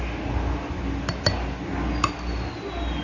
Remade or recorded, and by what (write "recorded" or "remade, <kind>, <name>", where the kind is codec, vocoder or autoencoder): recorded